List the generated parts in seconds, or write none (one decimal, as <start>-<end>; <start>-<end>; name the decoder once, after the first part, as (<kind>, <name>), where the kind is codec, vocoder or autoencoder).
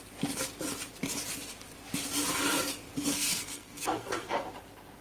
3.1-4.4 (codec, SNAC)